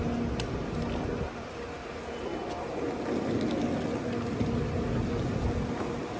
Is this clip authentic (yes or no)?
yes